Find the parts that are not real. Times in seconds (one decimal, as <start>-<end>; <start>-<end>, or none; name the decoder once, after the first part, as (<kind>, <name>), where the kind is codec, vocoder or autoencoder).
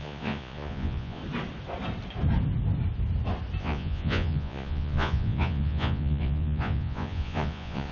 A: 0.0-1.2 (vocoder, Vocos); 3.6-7.9